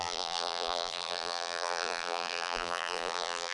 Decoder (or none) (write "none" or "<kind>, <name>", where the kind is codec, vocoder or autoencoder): vocoder, BigVGAN v2